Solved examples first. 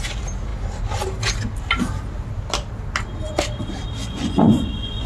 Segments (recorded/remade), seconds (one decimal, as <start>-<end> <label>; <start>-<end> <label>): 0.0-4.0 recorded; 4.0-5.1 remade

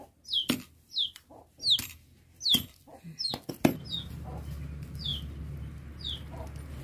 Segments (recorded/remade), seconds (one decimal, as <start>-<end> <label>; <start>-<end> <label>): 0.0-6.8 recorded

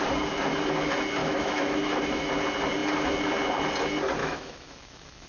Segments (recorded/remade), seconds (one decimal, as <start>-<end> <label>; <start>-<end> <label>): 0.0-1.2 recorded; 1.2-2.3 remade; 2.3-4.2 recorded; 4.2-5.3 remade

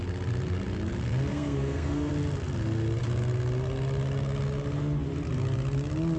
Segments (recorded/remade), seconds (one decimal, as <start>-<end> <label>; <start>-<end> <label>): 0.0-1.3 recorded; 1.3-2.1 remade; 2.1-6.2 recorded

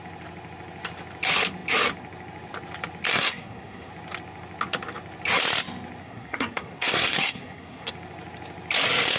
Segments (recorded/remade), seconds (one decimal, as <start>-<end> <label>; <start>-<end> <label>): 0.0-3.1 recorded; 3.1-3.9 remade; 3.9-6.0 recorded; 6.0-7.9 remade; 7.9-9.2 recorded

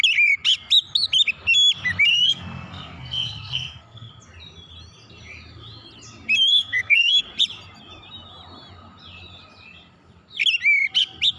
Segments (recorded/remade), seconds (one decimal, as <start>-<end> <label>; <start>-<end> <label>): 0.0-2.1 recorded; 2.1-4.1 remade; 4.1-6.5 recorded; 6.5-7.2 remade; 7.2-11.4 recorded